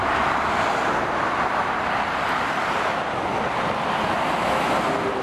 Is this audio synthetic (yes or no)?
no